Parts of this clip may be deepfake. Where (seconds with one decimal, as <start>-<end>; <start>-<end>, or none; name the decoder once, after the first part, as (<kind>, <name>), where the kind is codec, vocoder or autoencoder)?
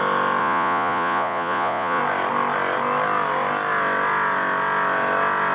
0.4-2.0 (vocoder, Vocos)